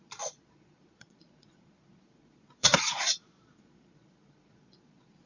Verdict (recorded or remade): remade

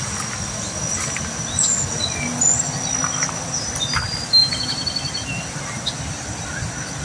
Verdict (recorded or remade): recorded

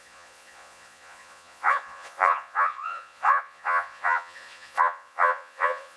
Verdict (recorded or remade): remade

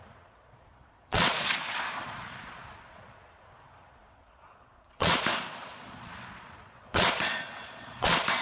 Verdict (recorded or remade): remade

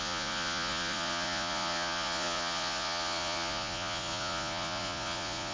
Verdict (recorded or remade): remade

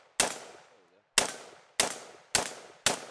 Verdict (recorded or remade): recorded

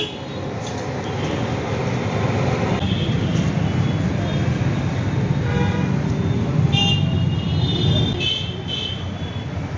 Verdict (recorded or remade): recorded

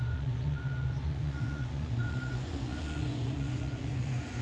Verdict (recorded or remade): remade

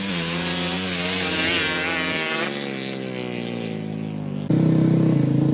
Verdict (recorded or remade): recorded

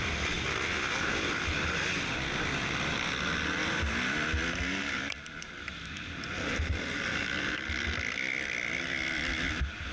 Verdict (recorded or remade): recorded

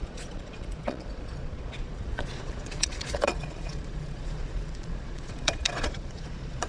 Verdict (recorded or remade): remade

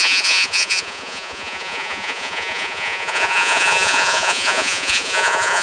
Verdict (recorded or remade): remade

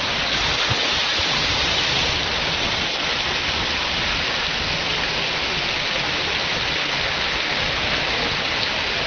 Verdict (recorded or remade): recorded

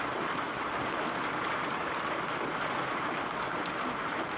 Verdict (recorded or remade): recorded